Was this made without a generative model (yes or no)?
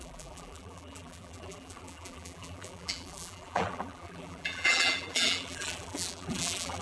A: no